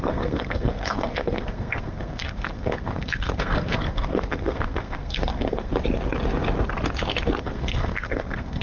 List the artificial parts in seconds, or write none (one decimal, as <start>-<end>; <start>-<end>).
0.0-5.7; 7.4-8.6

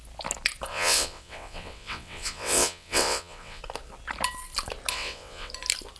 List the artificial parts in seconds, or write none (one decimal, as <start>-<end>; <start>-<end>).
0.7-3.6; 4.9-5.5